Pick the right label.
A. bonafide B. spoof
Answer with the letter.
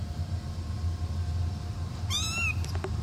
A